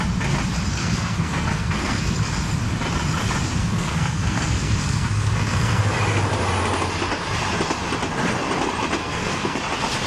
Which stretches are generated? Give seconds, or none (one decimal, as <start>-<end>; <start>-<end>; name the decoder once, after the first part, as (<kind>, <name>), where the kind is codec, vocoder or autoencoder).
0.7-2.1 (codec, SNAC); 3.6-5.8; 9.0-9.6